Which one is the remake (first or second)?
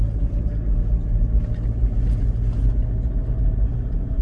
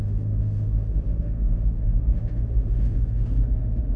second